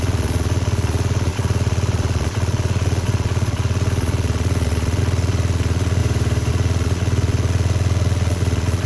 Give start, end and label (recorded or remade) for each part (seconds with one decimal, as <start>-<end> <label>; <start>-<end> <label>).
0.0-6.0 remade; 6.0-6.5 recorded; 6.5-8.9 remade